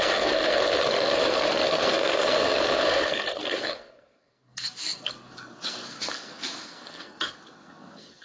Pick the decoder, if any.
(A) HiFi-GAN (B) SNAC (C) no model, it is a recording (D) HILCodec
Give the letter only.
B